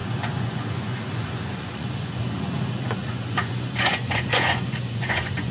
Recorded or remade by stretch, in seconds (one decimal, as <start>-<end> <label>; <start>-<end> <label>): 0.0-5.5 remade